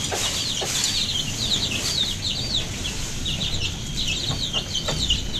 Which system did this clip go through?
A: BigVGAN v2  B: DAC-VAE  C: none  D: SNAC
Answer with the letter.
C